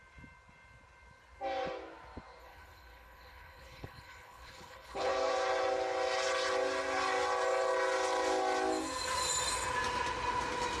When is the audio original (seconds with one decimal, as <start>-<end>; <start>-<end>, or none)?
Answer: 0.0-2.4; 5.1-10.8